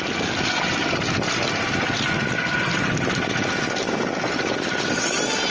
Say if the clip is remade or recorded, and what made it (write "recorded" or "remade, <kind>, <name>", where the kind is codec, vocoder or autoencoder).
recorded